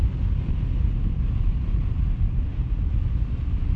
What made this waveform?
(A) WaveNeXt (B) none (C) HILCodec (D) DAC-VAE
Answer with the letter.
B